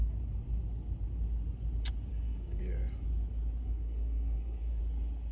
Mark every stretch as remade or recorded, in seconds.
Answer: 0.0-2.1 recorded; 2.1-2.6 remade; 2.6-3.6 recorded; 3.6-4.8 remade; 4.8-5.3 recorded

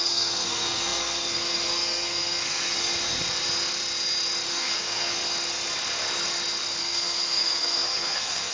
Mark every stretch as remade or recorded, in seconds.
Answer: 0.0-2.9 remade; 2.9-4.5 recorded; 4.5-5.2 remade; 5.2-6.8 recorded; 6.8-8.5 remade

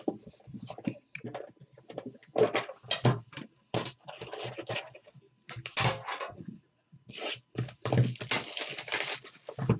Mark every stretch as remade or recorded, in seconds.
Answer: 0.0-6.1 recorded; 6.1-7.1 remade; 7.1-9.8 recorded

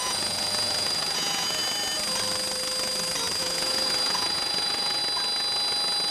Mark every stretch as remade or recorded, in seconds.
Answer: 0.0-1.6 remade; 1.6-3.4 recorded; 3.4-5.0 remade; 5.0-6.1 recorded

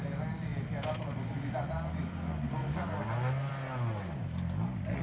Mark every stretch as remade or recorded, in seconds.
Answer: 0.0-5.0 recorded

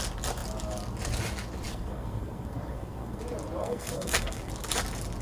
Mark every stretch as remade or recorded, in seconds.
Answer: 0.0-1.7 recorded; 1.7-3.2 remade; 3.2-3.6 recorded; 3.6-4.5 remade; 4.5-5.2 recorded

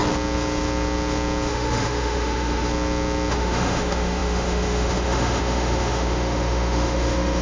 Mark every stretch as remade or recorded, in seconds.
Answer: 0.0-1.5 recorded; 1.5-2.7 remade; 2.7-3.3 recorded; 3.3-7.4 remade